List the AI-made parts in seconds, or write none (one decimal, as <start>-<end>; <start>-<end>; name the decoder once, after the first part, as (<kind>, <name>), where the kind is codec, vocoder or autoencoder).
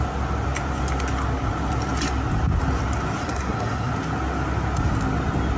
3.2-3.9 (codec, SNAC)